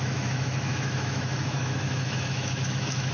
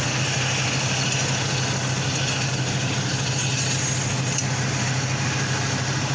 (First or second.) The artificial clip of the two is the first